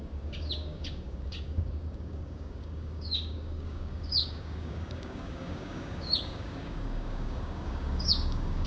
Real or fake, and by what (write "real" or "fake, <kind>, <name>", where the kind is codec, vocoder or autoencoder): fake, codec, DAC